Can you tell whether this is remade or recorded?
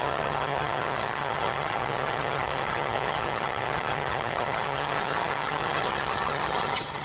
remade